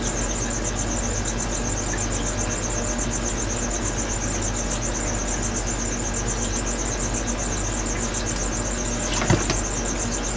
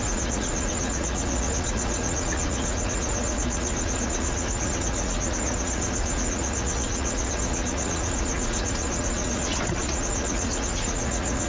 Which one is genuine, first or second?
first